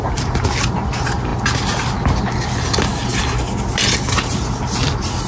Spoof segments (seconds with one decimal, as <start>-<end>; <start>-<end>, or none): none